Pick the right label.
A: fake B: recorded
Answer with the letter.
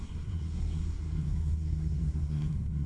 A